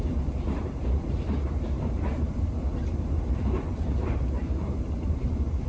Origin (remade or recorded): remade